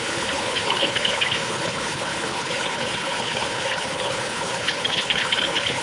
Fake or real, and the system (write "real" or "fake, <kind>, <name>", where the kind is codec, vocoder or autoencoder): fake, codec, HILCodec